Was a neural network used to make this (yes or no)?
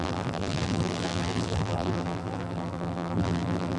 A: yes